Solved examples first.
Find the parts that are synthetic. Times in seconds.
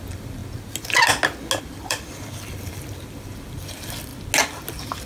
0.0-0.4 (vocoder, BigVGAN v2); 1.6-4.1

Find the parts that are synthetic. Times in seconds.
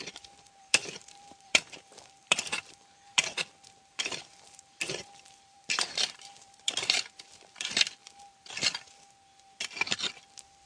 0.0-8.0 (vocoder, BigVGAN v2)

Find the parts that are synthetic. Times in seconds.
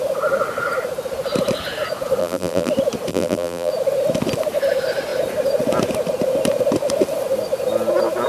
2.2-2.7 (vocoder, BigVGAN v2); 3.1-3.7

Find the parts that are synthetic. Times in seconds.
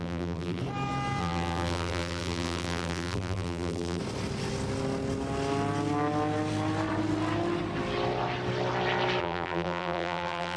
0.0-0.6 (vocoder, BigVGAN v2); 1.2-4.0; 9.2-10.6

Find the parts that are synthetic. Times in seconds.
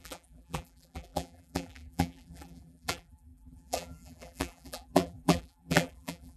0.0-6.4 (vocoder, BigVGAN v2)